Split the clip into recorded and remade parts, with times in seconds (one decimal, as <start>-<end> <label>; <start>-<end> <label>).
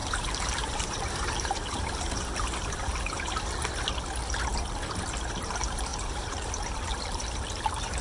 0.0-2.0 remade; 2.0-5.9 recorded; 5.9-6.5 remade; 6.5-8.0 recorded